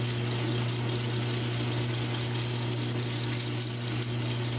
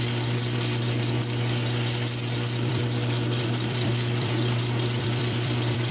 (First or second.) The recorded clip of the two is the first